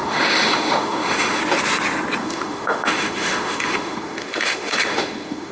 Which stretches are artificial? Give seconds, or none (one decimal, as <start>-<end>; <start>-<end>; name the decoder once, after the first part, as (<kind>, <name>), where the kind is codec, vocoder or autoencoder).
0.0-1.4 (autoencoder, DAC-VAE); 2.2-5.5